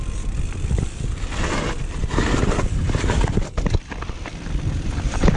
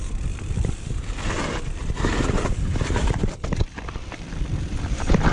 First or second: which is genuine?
first